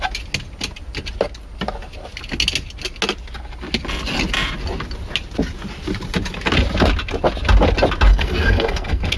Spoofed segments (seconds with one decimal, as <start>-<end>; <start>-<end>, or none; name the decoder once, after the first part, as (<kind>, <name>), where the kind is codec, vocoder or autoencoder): 8.1-9.2 (codec, SNAC)

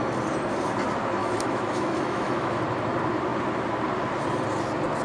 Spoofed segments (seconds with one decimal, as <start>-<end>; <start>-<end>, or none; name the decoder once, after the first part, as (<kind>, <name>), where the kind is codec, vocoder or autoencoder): 1.2-2.6 (autoencoder, DAC-VAE)

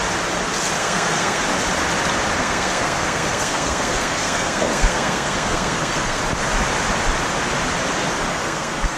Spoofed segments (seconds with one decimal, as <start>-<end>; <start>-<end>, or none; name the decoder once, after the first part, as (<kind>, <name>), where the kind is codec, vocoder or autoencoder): 0.8-1.4 (codec, SNAC); 2.4-6.2; 8.3-9.0

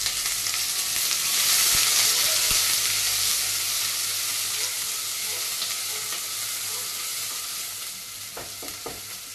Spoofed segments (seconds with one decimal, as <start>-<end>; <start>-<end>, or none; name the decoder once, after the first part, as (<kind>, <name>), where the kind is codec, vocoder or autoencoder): none